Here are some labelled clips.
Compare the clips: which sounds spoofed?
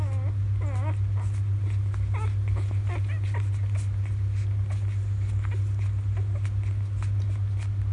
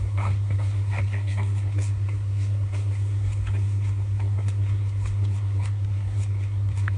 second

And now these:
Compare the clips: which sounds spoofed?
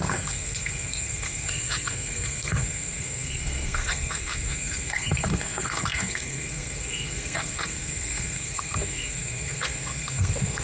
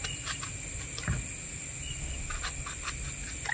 first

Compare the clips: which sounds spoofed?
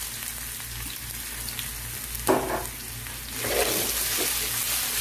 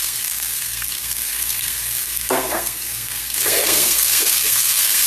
second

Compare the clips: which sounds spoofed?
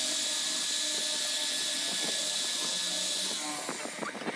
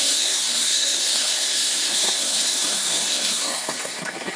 second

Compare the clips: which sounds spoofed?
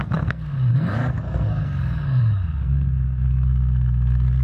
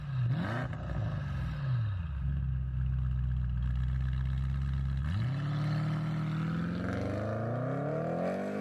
first